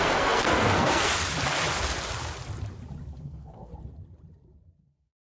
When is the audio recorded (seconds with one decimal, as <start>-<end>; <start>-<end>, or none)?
1.2-3.2; 3.7-4.8